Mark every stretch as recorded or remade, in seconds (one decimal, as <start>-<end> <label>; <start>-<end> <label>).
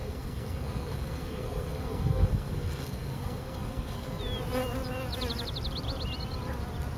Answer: 0.0-4.2 remade; 4.2-7.0 recorded